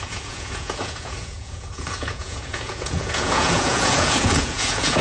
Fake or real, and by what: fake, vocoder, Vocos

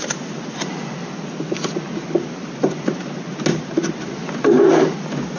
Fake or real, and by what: real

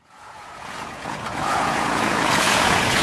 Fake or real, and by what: fake, vocoder, Vocos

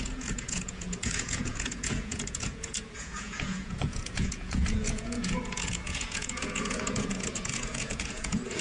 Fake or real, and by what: fake, vocoder, Vocos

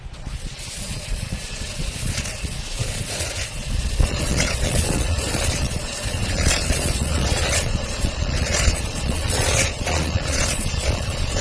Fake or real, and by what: fake, vocoder, Vocos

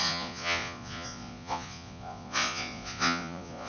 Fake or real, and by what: fake, vocoder, Vocos